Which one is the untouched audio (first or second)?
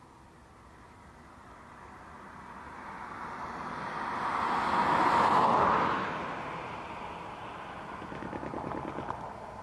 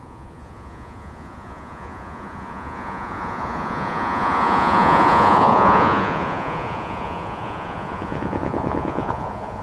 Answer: first